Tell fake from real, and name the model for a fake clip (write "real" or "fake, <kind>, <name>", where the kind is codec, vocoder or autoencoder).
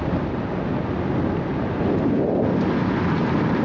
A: real